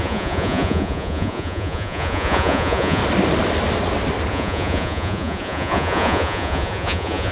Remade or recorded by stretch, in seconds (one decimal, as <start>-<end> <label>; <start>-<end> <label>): 0.0-3.0 remade; 3.0-4.3 recorded; 4.3-7.3 remade